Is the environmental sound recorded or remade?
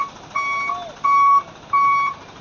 recorded